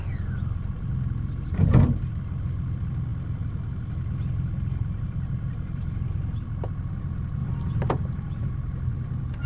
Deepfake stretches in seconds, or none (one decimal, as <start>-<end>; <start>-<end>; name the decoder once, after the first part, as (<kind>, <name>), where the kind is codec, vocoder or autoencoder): none